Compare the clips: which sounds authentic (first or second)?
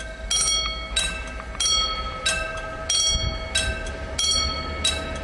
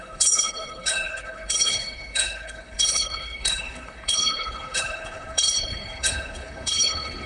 first